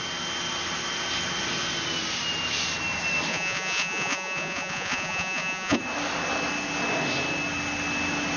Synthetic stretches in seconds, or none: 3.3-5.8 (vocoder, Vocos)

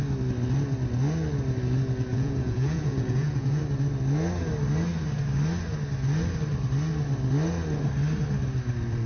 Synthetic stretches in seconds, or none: 2.1-3.6 (vocoder, Vocos)

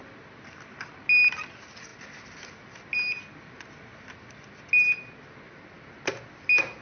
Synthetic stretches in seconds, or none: none

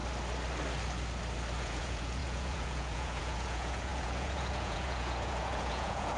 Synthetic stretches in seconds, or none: 1.6-6.2 (vocoder, Vocos)

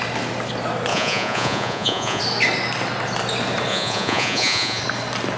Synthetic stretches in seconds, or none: 0.9-2.2 (vocoder, Vocos); 3.7-4.8

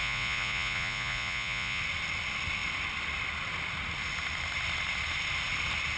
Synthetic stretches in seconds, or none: 0.0-1.8 (vocoder, Vocos)